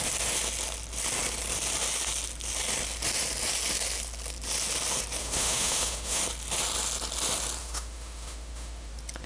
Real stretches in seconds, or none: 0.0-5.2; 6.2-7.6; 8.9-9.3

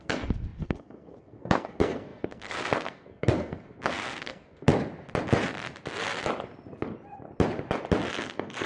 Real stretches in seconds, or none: 4.7-8.1

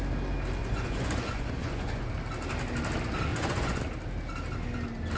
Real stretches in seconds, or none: 0.0-0.6; 2.1-3.3; 3.8-5.2